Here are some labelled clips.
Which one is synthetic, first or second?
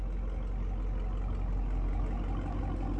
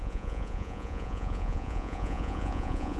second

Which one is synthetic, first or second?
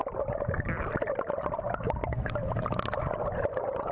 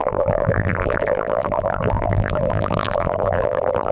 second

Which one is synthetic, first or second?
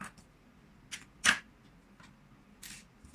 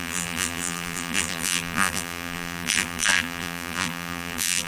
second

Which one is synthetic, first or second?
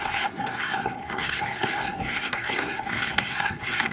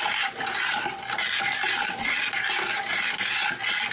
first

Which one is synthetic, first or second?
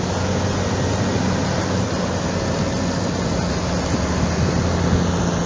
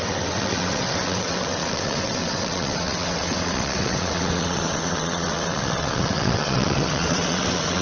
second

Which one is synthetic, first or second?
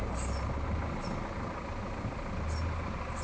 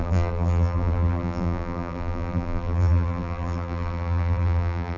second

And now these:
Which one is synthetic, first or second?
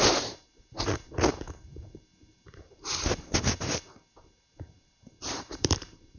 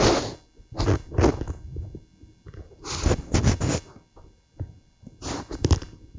first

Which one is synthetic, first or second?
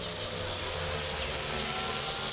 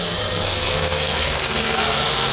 second